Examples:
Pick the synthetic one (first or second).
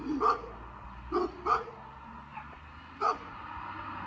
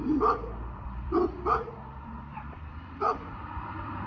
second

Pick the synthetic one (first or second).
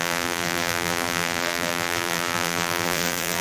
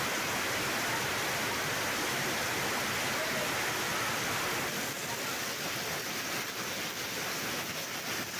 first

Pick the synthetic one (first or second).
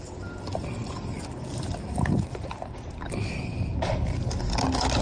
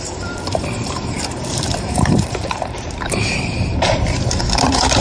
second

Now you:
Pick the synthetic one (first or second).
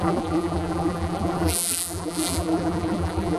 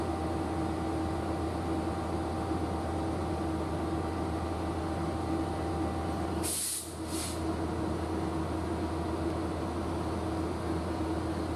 first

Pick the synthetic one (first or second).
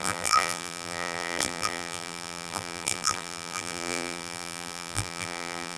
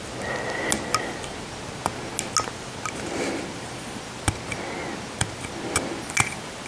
first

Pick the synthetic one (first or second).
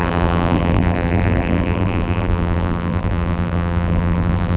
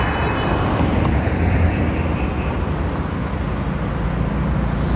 first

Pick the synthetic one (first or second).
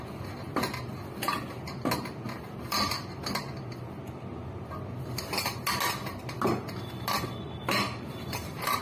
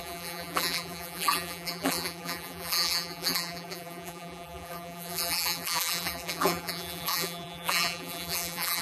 second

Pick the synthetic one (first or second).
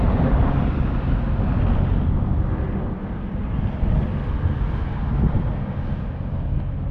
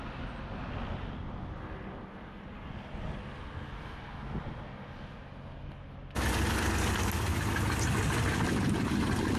first